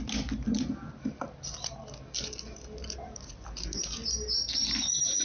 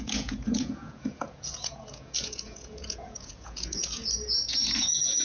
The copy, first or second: second